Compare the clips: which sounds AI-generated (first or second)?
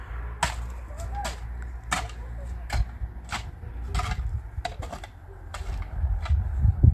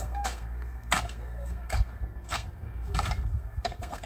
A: second